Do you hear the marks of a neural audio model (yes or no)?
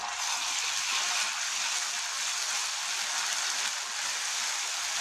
no